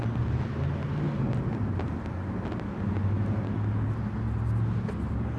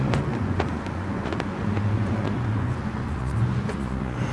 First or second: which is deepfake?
second